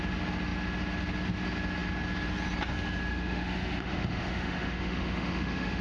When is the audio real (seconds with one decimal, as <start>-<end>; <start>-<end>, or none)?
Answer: 0.0-3.1